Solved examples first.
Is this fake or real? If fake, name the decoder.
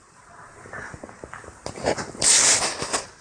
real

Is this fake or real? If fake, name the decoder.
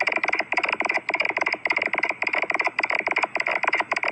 real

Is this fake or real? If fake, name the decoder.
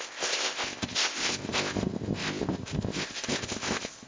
fake, codec, ZipCodec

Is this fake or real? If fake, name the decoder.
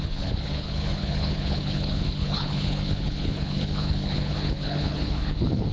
fake, codec, HILCodec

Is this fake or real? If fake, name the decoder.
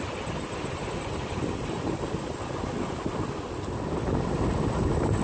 real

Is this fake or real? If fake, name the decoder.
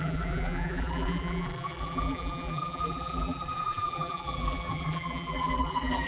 fake, vocoder, BigVGAN v2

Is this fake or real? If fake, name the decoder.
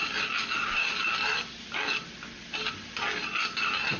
real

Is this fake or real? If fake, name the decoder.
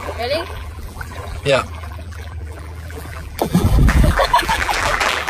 fake, vocoder, BigVGAN v2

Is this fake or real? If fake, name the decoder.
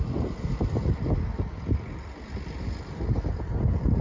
real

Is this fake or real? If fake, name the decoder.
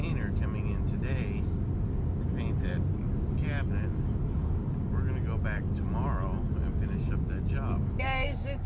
real